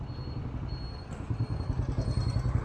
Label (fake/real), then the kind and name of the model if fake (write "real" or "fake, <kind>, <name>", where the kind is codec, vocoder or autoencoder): real